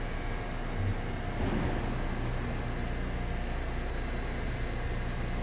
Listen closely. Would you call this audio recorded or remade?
recorded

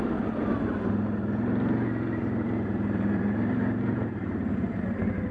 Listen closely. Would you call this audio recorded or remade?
remade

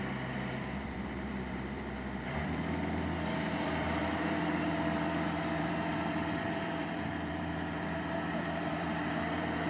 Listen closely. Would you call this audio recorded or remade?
remade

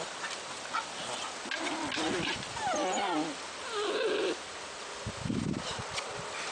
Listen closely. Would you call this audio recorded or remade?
remade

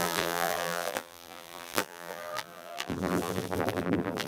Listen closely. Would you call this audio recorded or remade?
remade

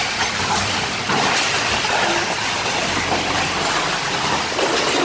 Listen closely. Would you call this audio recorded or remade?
recorded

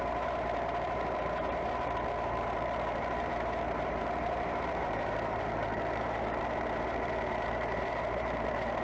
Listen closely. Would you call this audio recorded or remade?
remade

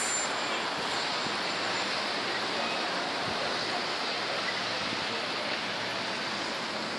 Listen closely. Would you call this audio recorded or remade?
recorded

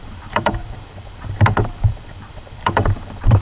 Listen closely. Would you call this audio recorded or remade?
remade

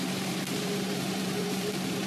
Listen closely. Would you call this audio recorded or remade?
remade